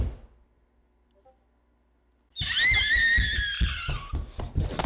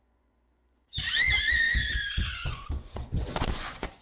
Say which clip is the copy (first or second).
second